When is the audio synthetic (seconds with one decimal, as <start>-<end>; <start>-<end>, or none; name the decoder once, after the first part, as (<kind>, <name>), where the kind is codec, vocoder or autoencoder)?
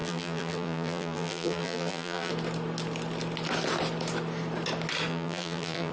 0.0-2.3 (vocoder, BigVGAN v2); 5.1-5.9